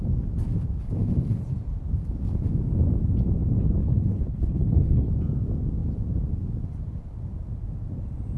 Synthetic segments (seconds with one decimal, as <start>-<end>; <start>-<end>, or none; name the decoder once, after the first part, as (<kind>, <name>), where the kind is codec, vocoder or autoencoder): 3.8-5.1 (codec, HILCodec)

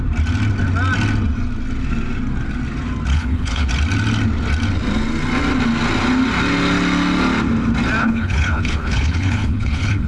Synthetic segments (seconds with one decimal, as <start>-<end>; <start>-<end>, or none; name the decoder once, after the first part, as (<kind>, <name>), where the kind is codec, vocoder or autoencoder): 3.1-3.7 (codec, HILCodec); 8.0-10.1

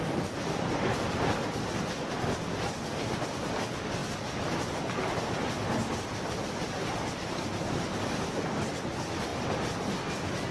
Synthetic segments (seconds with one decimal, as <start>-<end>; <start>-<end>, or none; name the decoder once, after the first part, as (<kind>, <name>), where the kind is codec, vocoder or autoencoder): none